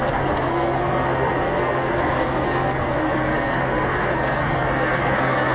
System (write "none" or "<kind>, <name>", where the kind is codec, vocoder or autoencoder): codec, SNAC